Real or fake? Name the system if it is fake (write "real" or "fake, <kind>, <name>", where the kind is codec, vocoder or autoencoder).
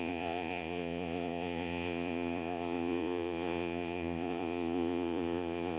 fake, vocoder, Vocos